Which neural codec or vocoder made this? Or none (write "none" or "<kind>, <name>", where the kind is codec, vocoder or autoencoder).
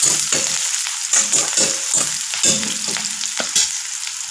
none